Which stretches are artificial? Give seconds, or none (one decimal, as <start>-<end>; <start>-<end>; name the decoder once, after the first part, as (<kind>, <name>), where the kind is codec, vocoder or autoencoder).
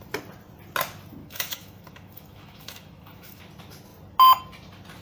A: 1.2-3.4 (autoencoder, DAC-VAE)